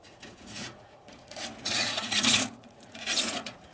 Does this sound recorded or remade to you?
remade